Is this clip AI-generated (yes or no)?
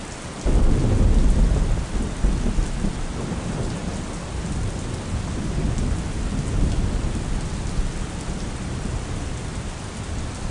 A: no